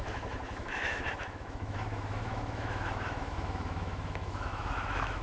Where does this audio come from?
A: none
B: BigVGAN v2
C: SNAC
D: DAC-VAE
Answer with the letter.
D